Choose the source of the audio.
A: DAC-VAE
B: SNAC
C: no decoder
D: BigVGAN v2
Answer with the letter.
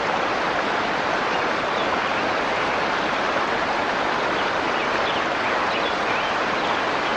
C